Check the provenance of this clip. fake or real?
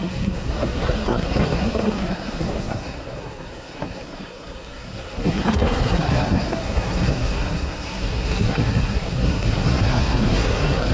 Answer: fake